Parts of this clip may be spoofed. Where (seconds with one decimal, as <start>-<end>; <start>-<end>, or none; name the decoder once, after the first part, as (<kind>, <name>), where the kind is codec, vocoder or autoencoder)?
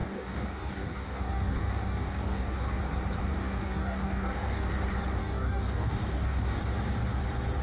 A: 0.0-2.8 (codec, DAC); 3.2-4.7; 5.2-6.6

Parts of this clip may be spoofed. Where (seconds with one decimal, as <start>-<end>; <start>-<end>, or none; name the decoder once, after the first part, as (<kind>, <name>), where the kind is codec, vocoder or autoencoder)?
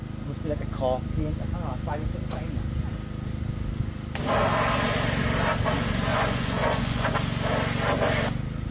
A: 6.1-7.1 (vocoder, Vocos)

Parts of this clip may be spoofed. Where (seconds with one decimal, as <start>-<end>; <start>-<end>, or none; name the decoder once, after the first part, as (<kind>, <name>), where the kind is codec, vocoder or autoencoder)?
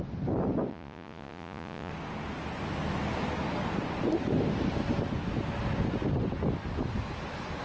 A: 0.7-1.9 (vocoder, Vocos)